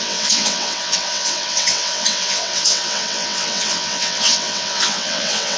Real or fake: fake